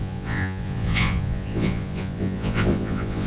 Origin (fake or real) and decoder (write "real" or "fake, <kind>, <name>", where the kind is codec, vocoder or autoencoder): fake, vocoder, Vocos